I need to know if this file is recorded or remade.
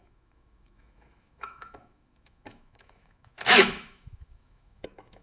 remade